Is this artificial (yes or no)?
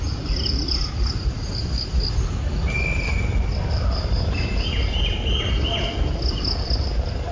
no